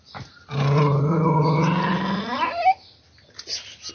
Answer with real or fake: real